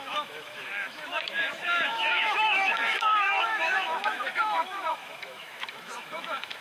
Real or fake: fake